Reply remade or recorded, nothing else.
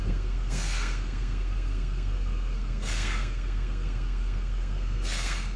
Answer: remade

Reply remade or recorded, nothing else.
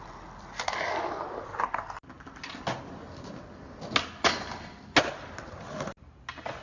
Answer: recorded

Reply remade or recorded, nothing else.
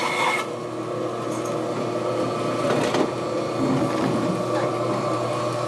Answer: recorded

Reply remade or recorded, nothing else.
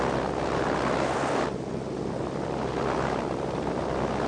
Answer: recorded